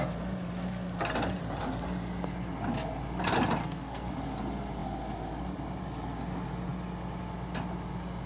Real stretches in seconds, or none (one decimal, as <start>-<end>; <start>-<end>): 0.0-3.6; 4.1-8.3